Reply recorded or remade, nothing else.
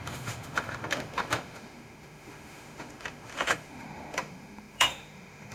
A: remade